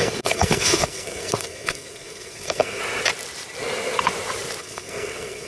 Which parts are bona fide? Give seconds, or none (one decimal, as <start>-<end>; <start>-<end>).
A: 2.8-4.6